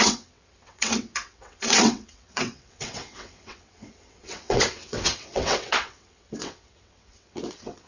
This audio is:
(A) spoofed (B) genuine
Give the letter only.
A